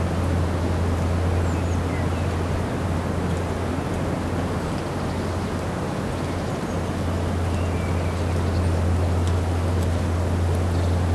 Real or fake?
real